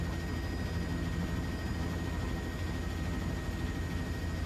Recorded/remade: recorded